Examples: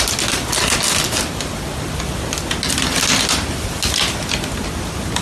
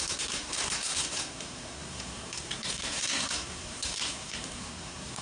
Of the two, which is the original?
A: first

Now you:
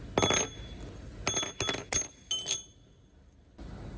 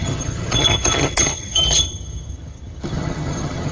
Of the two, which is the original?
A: first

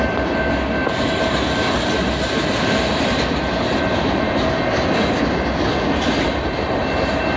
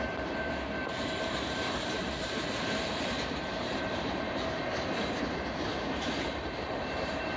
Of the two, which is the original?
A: first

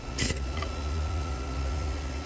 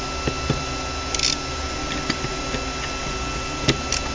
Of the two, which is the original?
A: second